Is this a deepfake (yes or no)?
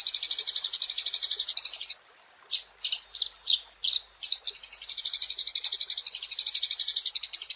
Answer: no